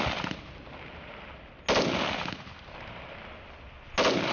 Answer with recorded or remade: recorded